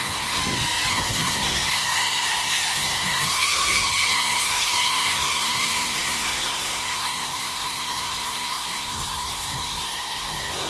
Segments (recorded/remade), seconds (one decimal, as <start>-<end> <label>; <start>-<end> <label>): 0.0-0.4 remade; 0.4-0.9 recorded; 0.9-10.7 remade